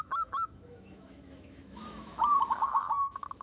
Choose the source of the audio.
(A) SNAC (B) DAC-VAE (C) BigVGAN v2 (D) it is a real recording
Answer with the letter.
B